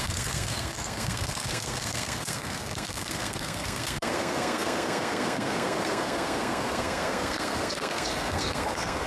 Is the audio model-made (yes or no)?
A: yes